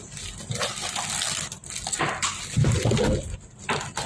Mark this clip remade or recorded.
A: recorded